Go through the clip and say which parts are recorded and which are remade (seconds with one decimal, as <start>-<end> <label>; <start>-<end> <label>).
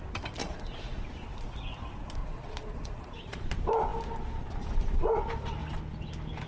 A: 0.0-0.4 recorded; 0.4-1.0 remade; 1.0-2.2 recorded; 2.2-3.4 remade; 3.4-6.5 recorded